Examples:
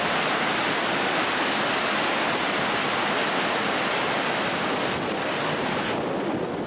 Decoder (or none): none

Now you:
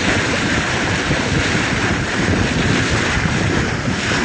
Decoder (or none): vocoder, BigVGAN v2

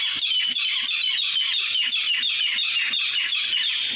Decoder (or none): none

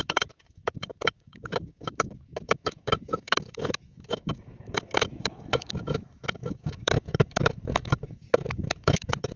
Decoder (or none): autoencoder, DAC-VAE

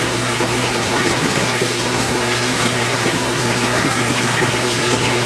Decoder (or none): codec, SNAC